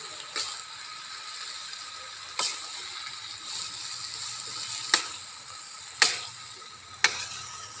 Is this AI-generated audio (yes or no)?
no